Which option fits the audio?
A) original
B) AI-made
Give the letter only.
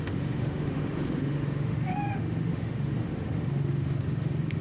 B